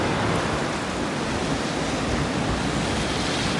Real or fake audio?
real